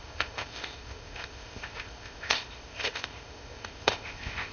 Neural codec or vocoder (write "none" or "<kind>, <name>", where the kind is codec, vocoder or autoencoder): codec, ZipCodec